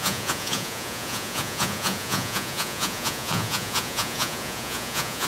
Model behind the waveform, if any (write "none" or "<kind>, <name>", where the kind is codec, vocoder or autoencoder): vocoder, Vocos